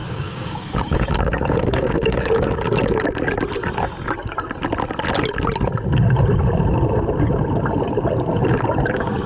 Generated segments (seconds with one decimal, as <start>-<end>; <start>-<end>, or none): 0.0-2.8